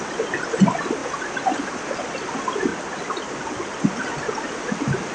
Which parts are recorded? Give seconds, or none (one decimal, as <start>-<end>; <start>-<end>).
0.0-5.1